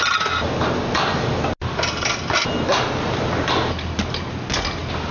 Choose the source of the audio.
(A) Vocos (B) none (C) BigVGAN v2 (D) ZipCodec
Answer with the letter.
B